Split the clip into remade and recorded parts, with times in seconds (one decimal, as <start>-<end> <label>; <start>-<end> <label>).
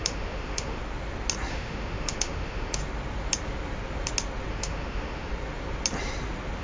0.0-0.8 remade; 0.8-1.5 recorded; 1.5-2.8 remade; 2.8-4.5 recorded; 4.5-5.3 remade; 5.3-6.6 recorded